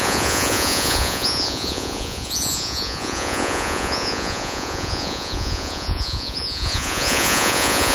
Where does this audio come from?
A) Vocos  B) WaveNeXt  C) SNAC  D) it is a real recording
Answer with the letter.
A